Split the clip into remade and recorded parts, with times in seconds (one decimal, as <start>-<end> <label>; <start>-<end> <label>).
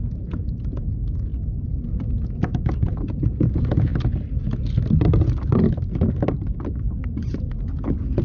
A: 0.0-1.3 remade; 1.3-2.0 recorded; 2.0-3.9 remade; 3.9-7.2 recorded; 7.2-8.2 remade